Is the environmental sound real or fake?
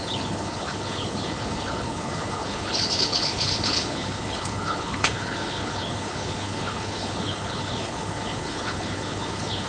fake